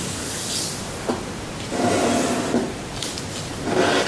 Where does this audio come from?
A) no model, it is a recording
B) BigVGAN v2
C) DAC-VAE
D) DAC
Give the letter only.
A